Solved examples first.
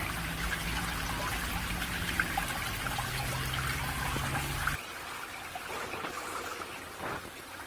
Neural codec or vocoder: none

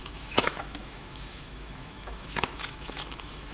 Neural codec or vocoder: autoencoder, DAC-VAE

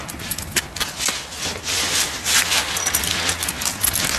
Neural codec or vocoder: none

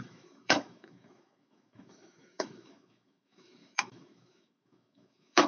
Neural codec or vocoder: autoencoder, DAC-VAE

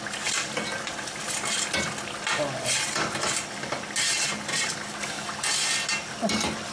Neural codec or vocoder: none